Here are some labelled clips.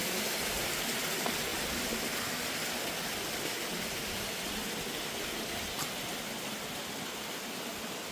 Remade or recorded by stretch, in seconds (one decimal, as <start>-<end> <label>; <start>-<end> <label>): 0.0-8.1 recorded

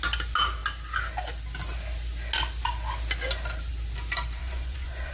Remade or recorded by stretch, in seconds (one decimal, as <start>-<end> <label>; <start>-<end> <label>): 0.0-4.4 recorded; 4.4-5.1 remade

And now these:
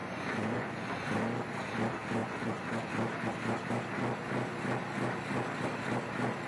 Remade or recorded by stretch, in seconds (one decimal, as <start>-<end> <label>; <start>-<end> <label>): 0.0-0.9 remade; 0.9-2.2 recorded; 2.2-2.9 remade; 2.9-6.5 recorded